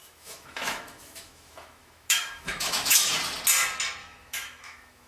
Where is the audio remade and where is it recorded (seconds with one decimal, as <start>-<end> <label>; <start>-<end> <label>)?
0.0-3.1 remade; 3.1-4.0 recorded; 4.0-5.1 remade